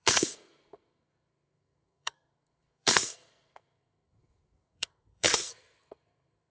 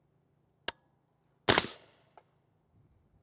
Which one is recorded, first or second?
second